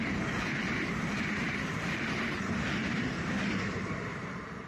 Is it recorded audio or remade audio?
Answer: remade